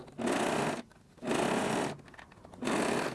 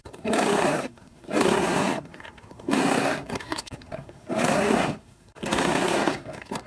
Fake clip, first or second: second